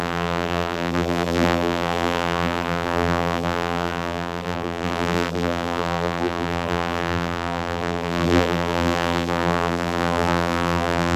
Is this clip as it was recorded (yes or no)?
no